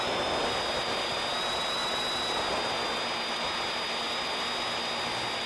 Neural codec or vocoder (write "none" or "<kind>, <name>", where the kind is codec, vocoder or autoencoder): none